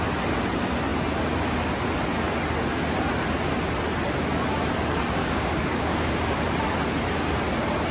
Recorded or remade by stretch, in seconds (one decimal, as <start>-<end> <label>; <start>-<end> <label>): 0.0-5.2 recorded; 5.2-6.1 remade; 6.1-7.9 recorded